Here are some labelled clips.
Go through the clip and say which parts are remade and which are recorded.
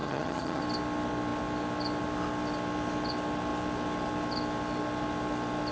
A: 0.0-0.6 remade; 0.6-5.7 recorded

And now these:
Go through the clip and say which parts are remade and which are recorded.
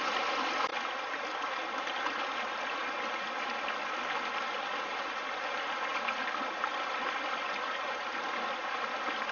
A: 0.0-9.3 recorded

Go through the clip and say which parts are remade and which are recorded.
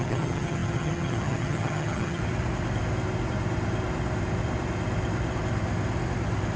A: 0.0-2.2 remade; 2.2-6.6 recorded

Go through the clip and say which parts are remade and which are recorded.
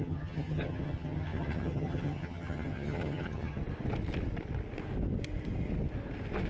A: 0.0-3.6 remade; 3.6-6.5 recorded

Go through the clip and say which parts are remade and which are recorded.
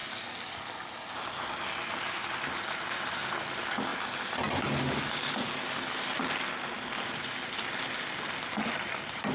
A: 0.0-9.3 recorded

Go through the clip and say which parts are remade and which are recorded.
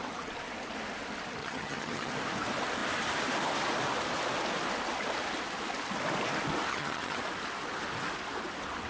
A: 0.0-1.4 recorded; 1.4-2.1 remade; 2.1-6.7 recorded; 6.7-7.2 remade; 7.2-8.9 recorded